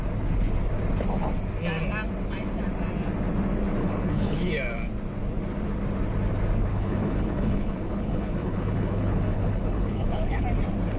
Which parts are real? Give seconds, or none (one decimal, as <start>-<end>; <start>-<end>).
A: 0.0-3.8; 4.5-6.7; 10.4-11.0